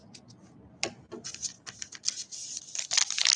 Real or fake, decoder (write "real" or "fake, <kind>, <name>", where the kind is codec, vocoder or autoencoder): real